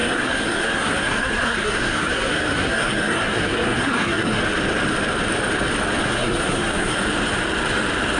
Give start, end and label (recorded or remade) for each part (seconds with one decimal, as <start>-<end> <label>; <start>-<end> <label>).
0.0-4.4 remade; 4.4-6.0 recorded; 6.0-7.0 remade; 7.0-8.2 recorded